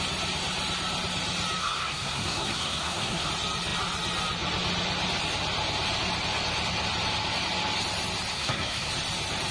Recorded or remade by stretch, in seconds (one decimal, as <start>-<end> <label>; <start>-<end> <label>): 0.0-1.6 recorded; 1.6-3.3 remade; 3.3-8.3 recorded; 8.3-8.9 remade; 8.9-9.5 recorded

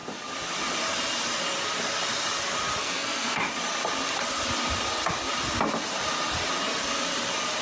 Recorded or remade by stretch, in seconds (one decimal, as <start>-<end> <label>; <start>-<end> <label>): 0.0-2.8 recorded; 2.8-3.4 remade; 3.4-7.6 recorded

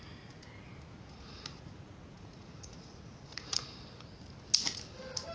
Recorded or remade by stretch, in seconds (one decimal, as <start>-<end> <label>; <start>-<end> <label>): 0.0-0.9 recorded; 0.9-3.6 remade; 3.6-5.3 recorded

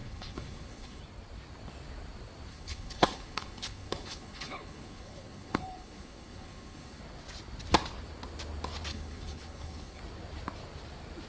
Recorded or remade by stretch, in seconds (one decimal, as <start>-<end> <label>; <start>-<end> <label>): 0.0-1.0 remade; 1.0-2.5 recorded; 2.5-7.0 remade; 7.0-8.9 recorded; 8.9-10.0 remade; 10.0-11.3 recorded

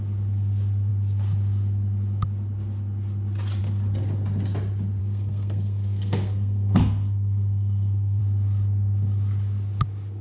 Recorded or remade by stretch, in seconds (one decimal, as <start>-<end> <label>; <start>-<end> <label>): 0.0-5.0 recorded; 5.0-8.2 remade; 8.2-10.2 recorded

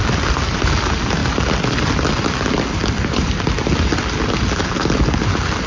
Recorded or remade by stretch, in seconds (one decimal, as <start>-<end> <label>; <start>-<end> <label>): 0.0-5.7 recorded

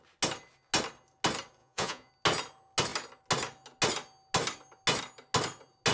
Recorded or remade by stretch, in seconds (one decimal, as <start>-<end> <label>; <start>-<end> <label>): 0.0-1.6 recorded; 1.6-2.1 remade; 2.1-5.9 recorded